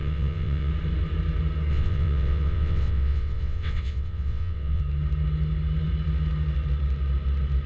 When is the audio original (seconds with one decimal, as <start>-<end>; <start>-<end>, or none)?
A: 0.7-1.7; 4.8-7.7